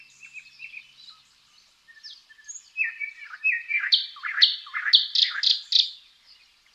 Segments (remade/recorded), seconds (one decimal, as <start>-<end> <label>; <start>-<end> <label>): 0.0-6.7 recorded